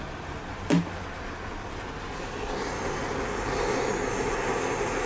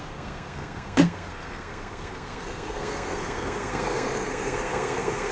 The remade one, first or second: second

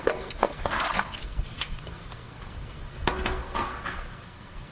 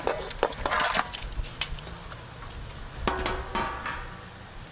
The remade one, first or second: first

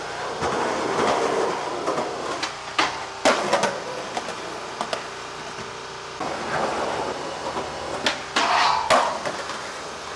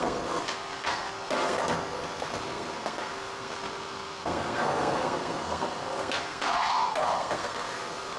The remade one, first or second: second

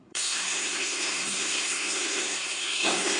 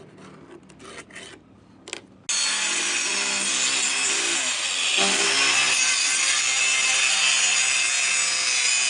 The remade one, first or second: first